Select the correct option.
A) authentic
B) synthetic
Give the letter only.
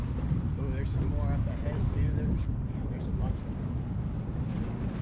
A